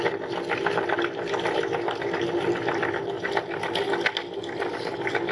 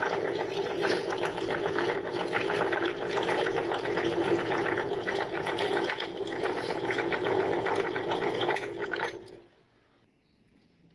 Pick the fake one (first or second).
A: second